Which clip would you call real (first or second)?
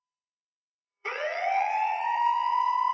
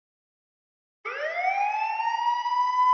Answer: second